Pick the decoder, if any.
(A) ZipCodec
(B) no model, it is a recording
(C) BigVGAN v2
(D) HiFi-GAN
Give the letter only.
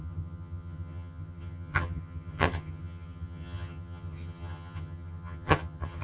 D